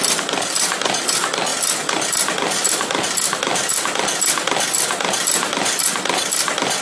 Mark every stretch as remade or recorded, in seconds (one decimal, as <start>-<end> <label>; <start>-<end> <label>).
0.0-6.8 remade